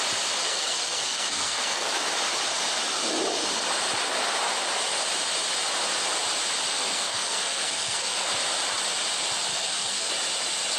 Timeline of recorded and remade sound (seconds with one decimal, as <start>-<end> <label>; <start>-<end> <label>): 0.0-0.4 recorded; 0.4-1.9 remade; 1.9-6.7 recorded; 6.7-8.3 remade; 8.3-9.5 recorded; 9.5-10.1 remade; 10.1-10.8 recorded